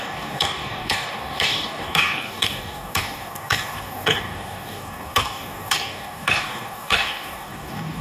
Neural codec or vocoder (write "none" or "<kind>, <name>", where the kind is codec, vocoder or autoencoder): codec, DAC